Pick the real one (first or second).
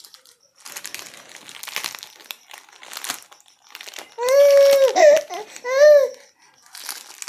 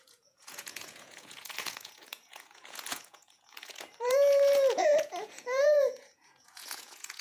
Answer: first